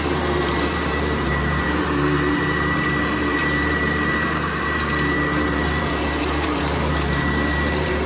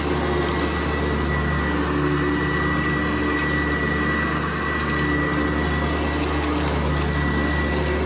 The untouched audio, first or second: second